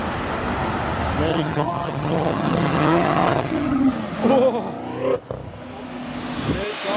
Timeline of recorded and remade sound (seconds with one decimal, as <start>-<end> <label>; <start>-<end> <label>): 0.0-1.3 recorded; 1.3-3.9 remade; 3.9-7.0 recorded